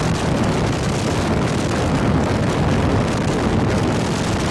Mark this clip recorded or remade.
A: recorded